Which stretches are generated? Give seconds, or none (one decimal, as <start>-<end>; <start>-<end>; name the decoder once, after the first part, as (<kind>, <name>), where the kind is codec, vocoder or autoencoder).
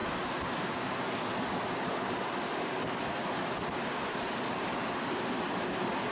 none